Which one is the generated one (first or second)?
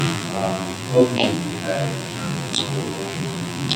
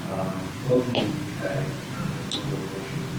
first